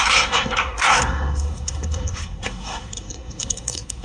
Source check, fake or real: fake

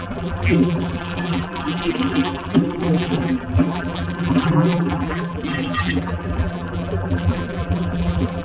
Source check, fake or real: fake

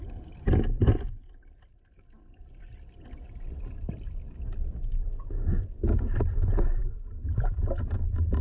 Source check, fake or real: fake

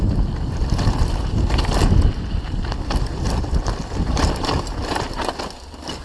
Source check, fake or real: real